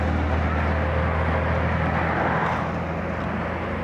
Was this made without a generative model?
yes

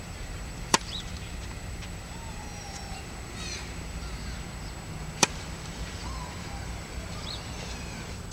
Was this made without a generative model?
no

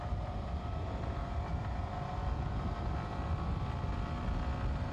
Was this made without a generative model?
yes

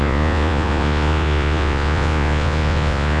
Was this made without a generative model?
no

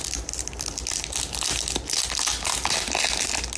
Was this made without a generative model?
yes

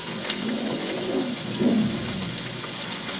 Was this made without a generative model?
no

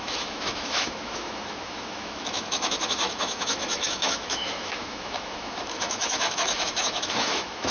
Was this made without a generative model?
no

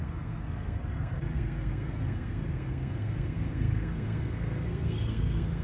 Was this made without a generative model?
no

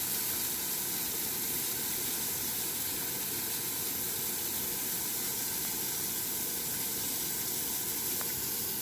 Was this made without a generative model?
yes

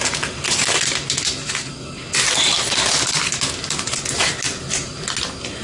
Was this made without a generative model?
yes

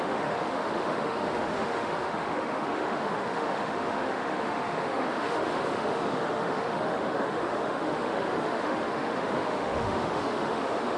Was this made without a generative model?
no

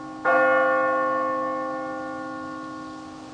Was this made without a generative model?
yes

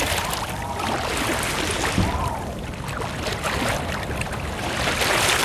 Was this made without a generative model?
no